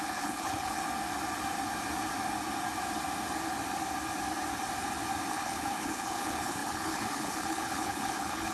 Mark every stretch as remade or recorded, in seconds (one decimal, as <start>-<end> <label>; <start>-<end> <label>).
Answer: 0.0-0.8 remade; 0.8-5.3 recorded; 5.3-8.5 remade